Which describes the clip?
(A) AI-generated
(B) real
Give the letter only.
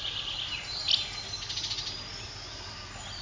B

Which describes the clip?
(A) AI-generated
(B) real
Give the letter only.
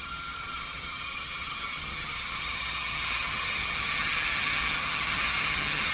A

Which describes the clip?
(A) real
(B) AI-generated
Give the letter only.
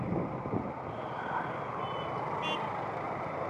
A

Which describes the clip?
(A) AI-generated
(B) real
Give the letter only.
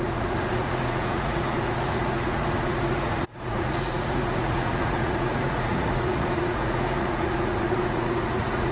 A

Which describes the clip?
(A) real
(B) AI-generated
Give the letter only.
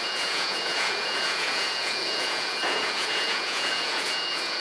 B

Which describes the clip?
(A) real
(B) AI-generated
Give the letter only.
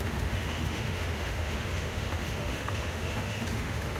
B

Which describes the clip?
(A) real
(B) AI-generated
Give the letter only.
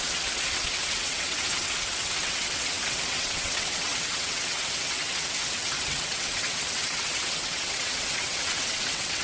B